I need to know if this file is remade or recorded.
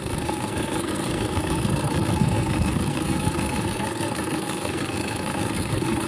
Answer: remade